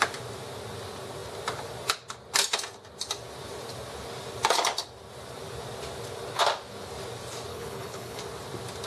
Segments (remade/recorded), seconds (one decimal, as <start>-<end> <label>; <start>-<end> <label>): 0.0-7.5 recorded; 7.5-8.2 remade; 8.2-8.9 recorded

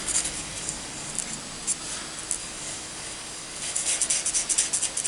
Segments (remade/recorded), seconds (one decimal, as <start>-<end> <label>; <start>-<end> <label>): 0.0-1.1 remade; 1.1-2.4 recorded; 2.4-4.0 remade; 4.0-5.1 recorded

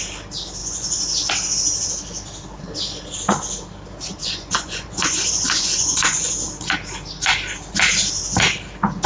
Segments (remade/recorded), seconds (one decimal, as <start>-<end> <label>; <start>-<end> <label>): 0.0-0.6 recorded; 0.6-1.3 remade; 1.3-4.2 recorded; 4.2-6.3 remade; 6.3-9.1 recorded

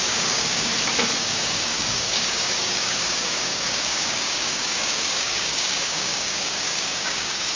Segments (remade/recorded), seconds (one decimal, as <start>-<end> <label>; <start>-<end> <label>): 0.0-0.7 remade; 0.7-1.2 recorded; 1.2-7.6 remade

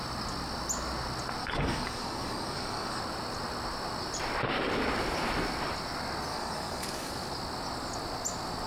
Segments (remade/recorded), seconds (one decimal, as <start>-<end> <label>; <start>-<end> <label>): 0.0-1.4 recorded; 1.4-3.0 remade; 3.0-6.3 recorded; 6.3-7.1 remade; 7.1-8.7 recorded